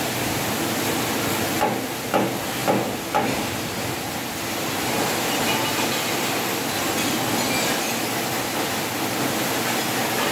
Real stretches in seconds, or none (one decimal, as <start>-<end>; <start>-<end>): 0.0-10.3